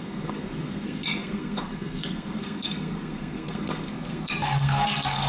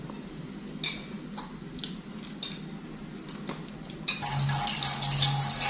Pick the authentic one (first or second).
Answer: second